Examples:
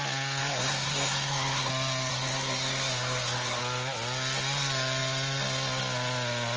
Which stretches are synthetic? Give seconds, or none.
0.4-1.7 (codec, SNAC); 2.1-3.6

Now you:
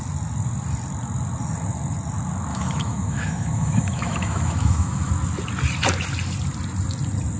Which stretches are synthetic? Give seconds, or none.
2.5-5.1 (autoencoder, DAC-VAE)

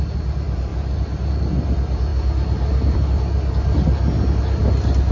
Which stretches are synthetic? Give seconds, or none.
none

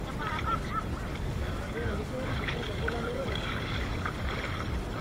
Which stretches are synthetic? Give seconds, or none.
1.1-4.1 (codec, DAC)

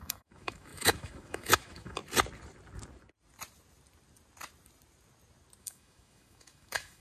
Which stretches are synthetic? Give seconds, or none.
0.0-2.0 (autoencoder, DAC-VAE); 5.6-7.0

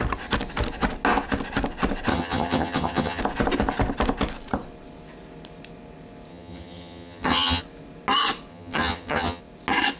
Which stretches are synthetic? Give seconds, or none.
2.1-3.2 (vocoder, HiFi-GAN); 6.3-7.6; 8.5-9.4

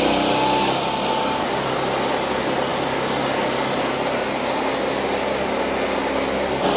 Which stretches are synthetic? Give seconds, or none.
none